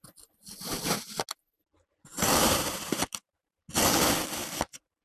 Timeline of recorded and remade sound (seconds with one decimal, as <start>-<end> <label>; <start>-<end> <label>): 0.0-2.1 recorded; 2.1-3.6 remade; 3.6-4.4 recorded; 4.4-5.0 remade